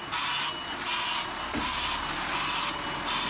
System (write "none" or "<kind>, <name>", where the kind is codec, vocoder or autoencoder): none